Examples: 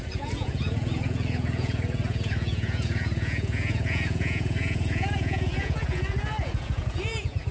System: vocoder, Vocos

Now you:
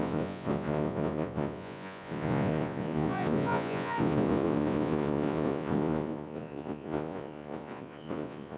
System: vocoder, Vocos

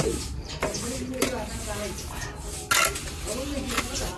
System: none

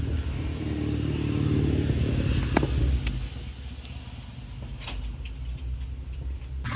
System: none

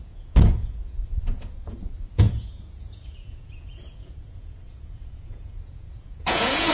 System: vocoder, Vocos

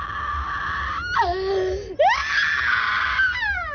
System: none